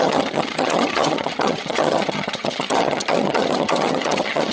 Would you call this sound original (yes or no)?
no